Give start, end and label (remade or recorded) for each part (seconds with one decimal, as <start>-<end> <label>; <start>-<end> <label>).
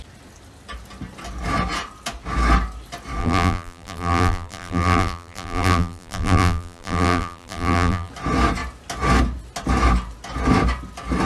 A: 0.0-3.2 recorded; 3.2-8.1 remade; 8.1-11.3 recorded